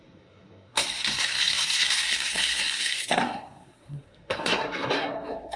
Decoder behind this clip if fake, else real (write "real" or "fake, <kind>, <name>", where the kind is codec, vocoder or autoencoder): fake, codec, SNAC